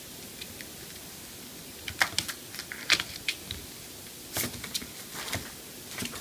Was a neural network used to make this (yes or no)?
no